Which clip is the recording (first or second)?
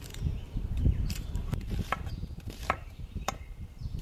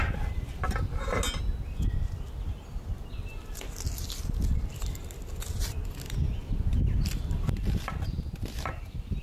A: second